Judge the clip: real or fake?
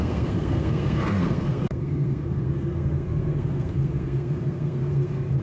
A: fake